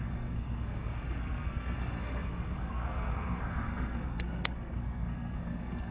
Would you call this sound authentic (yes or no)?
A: no